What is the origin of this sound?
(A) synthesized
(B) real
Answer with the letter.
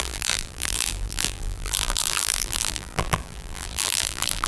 A